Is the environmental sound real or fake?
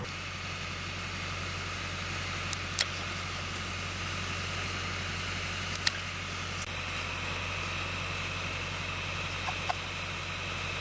real